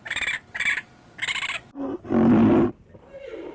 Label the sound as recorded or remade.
remade